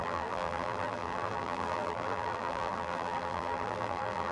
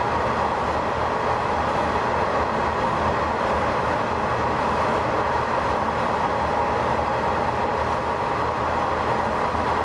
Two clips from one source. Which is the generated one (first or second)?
first